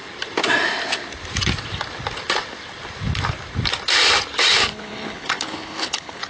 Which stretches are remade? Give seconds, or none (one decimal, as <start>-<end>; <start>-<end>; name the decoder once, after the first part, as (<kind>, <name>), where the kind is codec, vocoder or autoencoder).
4.6-6.3 (codec, HILCodec)